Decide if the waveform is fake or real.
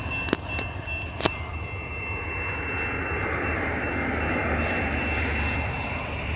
real